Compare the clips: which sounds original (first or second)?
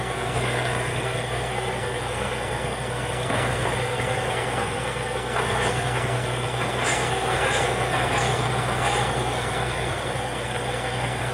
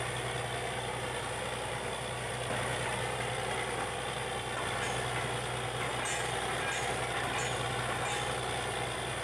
second